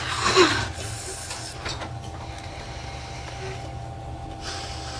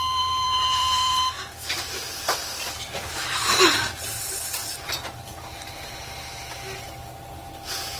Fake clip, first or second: second